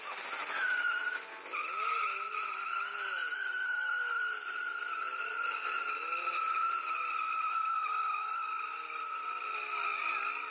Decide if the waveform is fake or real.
real